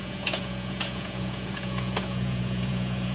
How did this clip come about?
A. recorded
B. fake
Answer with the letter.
B